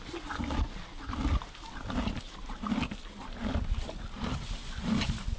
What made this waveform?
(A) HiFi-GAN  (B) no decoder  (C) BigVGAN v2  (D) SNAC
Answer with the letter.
B